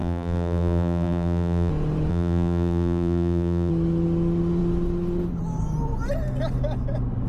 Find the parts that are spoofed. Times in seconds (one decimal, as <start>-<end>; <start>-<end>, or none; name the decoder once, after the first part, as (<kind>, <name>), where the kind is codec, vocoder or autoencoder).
0.0-1.7 (vocoder, BigVGAN v2); 2.1-3.7